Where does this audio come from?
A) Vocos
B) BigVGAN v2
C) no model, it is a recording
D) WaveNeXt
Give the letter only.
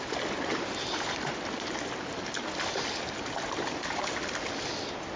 C